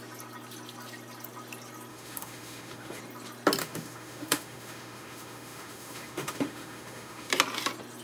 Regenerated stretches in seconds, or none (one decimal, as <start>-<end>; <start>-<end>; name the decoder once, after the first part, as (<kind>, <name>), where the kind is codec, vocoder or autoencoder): 1.9-3.0 (autoencoder, DAC-VAE); 3.6-7.3